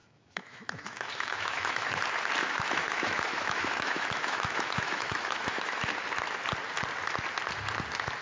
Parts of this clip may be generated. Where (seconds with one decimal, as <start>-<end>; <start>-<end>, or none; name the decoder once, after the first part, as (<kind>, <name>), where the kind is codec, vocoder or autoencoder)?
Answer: 0.0-1.9 (autoencoder, DAC-VAE); 2.4-5.9